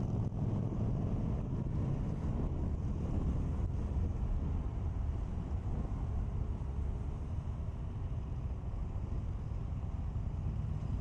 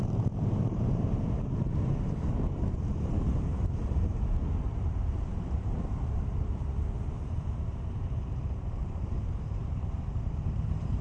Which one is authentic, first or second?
first